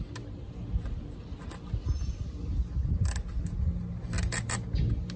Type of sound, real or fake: real